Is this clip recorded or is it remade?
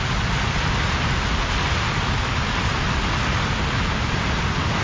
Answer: recorded